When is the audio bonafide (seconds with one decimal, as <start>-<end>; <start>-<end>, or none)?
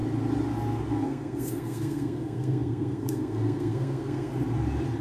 0.0-0.9; 4.3-5.0